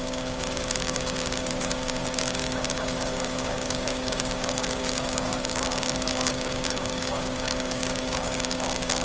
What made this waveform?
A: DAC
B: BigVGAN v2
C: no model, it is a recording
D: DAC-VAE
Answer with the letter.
A